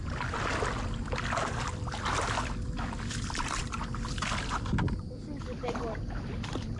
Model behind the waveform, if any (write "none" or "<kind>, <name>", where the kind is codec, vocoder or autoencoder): none